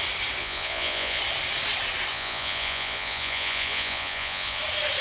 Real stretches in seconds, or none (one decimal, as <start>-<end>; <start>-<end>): 0.0-0.4; 1.2-2.1; 4.6-5.0